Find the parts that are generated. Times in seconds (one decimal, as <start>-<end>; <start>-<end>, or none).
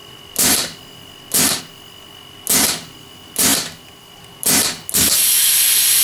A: 3.5-4.2